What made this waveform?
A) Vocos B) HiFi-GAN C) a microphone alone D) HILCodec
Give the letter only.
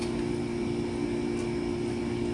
C